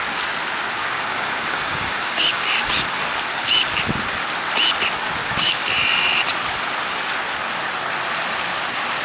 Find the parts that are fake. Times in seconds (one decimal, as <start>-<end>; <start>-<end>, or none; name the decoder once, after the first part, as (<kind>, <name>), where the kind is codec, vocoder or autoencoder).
0.8-2.7 (codec, DAC); 5.2-5.8